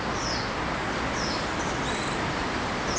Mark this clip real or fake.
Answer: real